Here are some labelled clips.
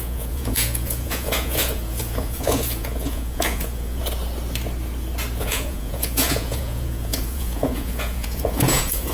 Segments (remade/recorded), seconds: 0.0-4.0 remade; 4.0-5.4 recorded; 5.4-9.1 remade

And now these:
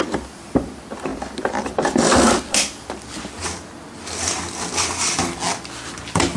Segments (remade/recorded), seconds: 0.0-6.4 recorded

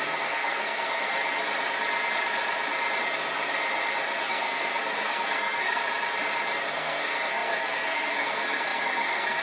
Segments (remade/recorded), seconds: 0.0-1.1 remade; 1.1-4.2 recorded; 4.2-5.8 remade; 5.8-6.7 recorded; 6.7-9.4 remade

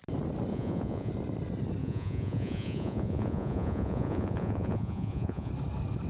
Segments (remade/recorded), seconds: 0.0-0.5 recorded; 0.5-1.1 remade; 1.1-1.8 recorded; 1.8-5.5 remade; 5.5-6.1 recorded

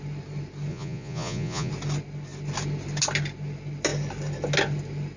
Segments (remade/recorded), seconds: 0.0-0.7 recorded; 0.7-1.7 remade; 1.7-5.2 recorded

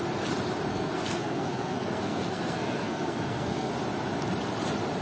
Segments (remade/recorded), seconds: 0.0-0.7 recorded; 0.7-3.7 remade; 3.7-5.0 recorded

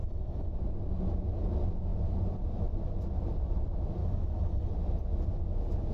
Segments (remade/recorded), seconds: 0.0-0.5 remade; 0.5-4.0 recorded; 4.0-4.7 remade; 4.7-5.9 recorded

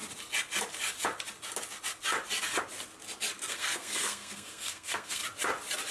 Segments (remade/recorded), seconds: 0.0-3.5 recorded; 3.5-5.2 remade; 5.2-5.9 recorded